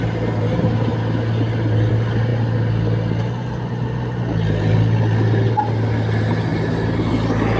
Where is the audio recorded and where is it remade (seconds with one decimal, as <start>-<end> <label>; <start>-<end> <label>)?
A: 0.0-7.6 recorded